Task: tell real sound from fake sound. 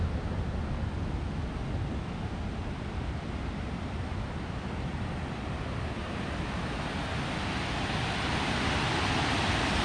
real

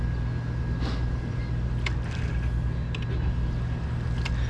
real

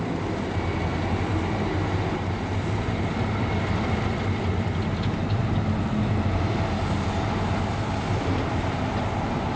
real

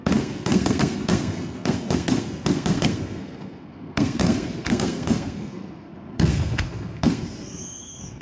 fake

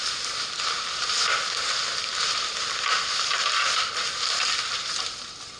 real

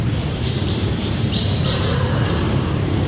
fake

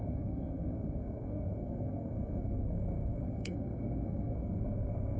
fake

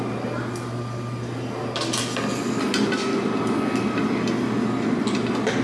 real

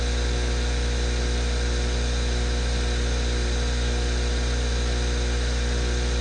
real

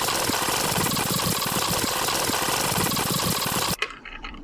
fake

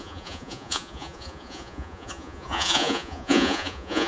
fake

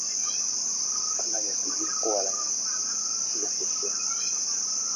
real